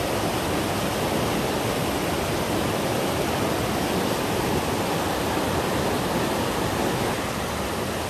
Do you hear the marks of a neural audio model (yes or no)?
no